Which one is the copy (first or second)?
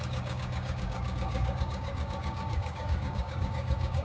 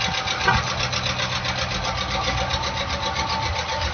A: first